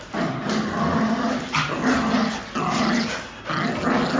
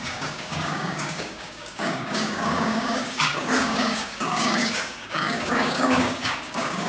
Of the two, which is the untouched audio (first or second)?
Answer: first